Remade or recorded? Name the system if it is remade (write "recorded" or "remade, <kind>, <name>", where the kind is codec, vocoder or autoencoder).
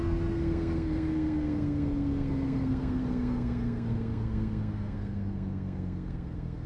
remade, codec, SNAC